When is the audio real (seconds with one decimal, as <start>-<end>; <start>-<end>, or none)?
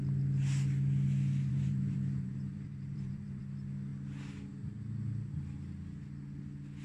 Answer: 0.0-1.5; 3.4-6.8